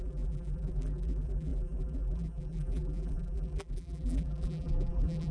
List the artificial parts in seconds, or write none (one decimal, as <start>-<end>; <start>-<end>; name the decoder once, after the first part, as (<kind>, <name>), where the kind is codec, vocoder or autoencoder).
0.0-5.3 (vocoder, BigVGAN v2)